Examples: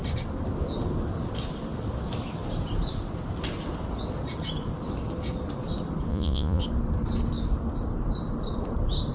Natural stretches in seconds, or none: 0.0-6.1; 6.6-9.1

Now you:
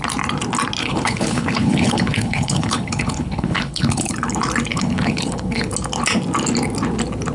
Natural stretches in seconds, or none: 0.0-0.8; 4.1-4.7; 5.7-7.3

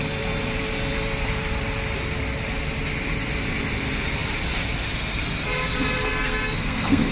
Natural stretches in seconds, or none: 0.0-6.1

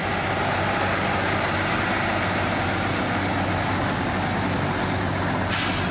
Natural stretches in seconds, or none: 0.0-5.9

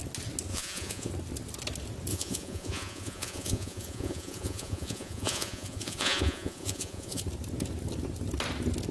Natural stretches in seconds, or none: 0.0-0.5; 1.1-2.1; 7.2-8.9

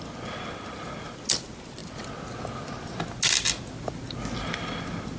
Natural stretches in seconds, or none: 0.0-5.2

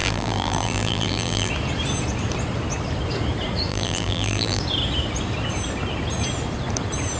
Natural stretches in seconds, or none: 1.5-3.7; 4.6-7.2

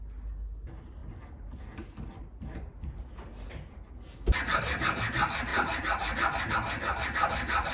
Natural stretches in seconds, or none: 0.0-7.7